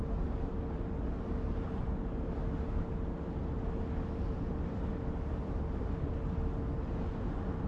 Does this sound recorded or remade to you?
recorded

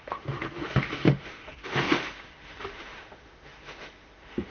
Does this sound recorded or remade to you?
remade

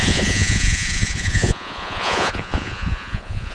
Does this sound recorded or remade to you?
remade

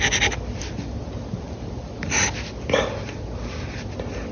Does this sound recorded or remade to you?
recorded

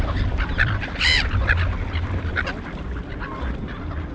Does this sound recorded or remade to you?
recorded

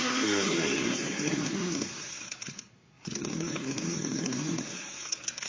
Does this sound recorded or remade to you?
remade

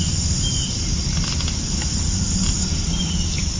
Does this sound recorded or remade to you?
recorded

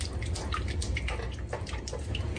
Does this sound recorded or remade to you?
recorded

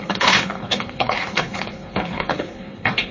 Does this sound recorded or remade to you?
remade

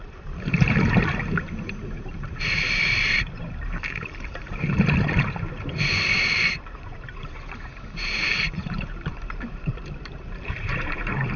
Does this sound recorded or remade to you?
remade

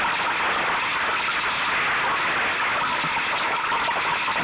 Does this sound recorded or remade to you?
recorded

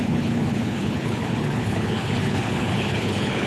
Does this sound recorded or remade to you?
remade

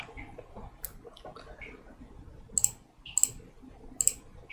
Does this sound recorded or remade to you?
recorded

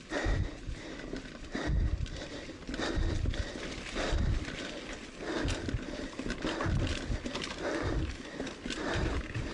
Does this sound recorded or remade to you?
recorded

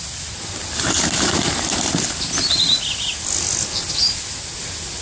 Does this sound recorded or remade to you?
recorded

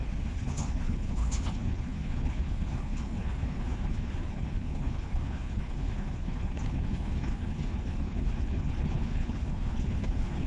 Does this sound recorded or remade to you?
remade